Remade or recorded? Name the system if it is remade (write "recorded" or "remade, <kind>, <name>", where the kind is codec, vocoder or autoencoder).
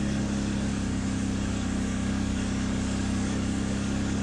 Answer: remade, codec, DAC